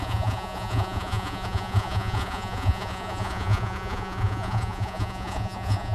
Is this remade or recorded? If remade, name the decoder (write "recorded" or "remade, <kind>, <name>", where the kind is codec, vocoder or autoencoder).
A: remade, vocoder, Vocos